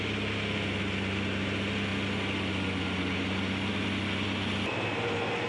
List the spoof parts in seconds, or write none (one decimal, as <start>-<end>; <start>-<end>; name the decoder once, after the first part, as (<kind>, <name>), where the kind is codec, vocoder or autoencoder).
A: none